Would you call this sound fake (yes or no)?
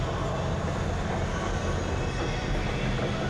no